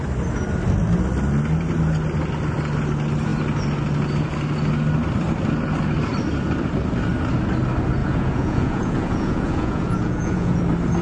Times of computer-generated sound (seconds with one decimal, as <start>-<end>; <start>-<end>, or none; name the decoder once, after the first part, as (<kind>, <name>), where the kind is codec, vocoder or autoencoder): 8.0-10.6 (vocoder, Vocos)